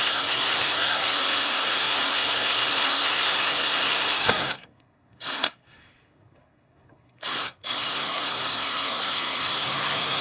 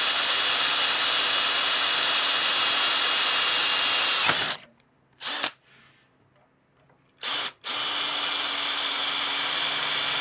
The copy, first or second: first